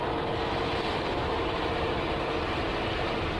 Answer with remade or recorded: recorded